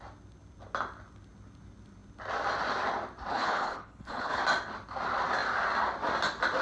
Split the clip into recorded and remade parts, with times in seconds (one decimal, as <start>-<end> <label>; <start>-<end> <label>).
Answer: 0.0-3.3 recorded; 3.3-4.4 remade; 4.4-6.6 recorded